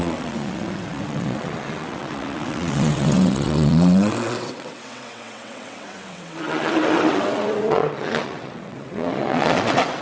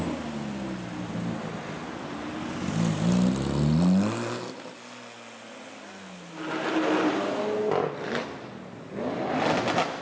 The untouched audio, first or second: second